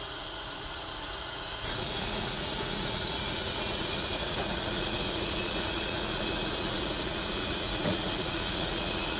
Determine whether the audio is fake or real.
fake